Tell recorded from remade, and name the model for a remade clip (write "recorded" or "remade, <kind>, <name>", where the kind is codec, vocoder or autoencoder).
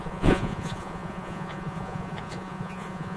remade, vocoder, Vocos